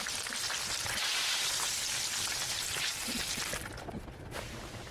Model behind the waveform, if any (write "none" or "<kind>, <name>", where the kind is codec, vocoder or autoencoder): none